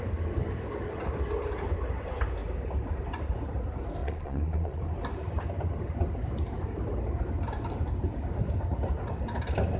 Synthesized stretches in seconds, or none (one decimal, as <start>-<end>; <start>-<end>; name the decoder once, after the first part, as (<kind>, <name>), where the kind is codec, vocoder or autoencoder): 4.0-4.8 (vocoder, Vocos)